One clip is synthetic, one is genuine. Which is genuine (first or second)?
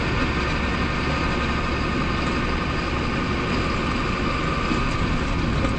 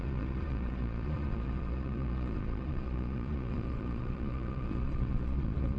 first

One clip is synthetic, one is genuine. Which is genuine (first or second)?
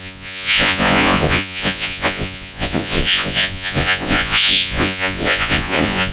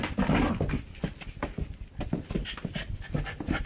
second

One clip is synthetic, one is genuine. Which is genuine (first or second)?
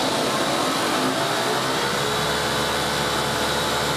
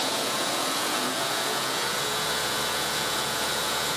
first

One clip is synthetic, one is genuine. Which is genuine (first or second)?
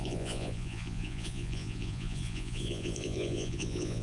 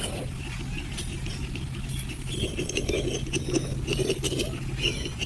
second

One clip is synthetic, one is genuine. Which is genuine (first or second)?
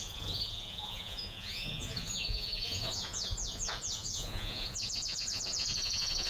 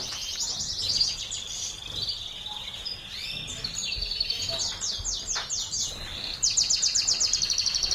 second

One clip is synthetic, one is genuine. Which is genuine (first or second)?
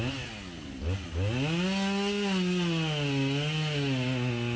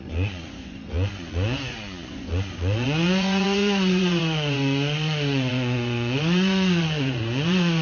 first